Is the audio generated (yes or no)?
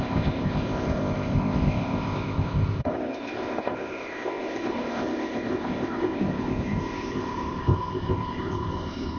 yes